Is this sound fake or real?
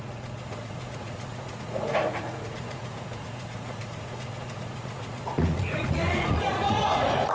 fake